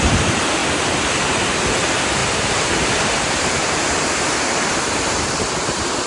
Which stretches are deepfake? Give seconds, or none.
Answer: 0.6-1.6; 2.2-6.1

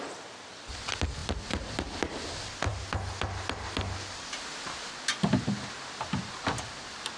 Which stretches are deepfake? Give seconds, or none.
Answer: 1.2-2.1

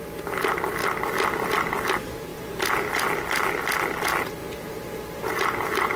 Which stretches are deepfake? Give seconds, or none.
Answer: 4.4-6.0

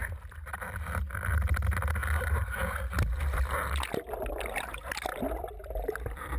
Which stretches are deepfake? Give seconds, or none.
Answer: 0.0-1.0; 5.1-6.4

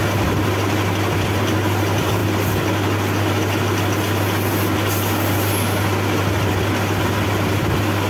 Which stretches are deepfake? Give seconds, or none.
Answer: none

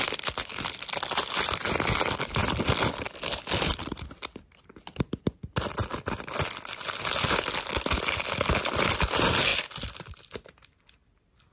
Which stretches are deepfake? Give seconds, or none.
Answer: none